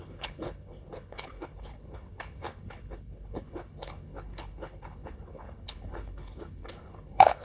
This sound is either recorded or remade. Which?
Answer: remade